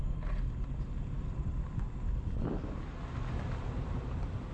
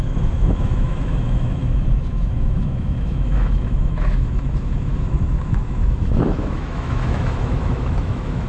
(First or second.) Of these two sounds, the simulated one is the second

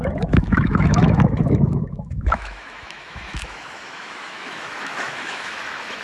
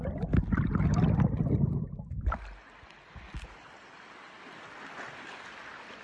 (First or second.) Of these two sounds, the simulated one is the first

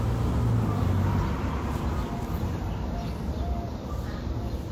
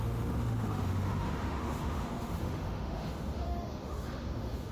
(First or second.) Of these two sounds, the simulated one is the second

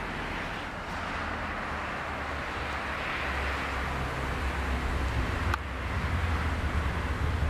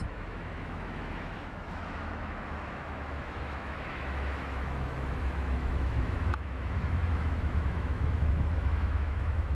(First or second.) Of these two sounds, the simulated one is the second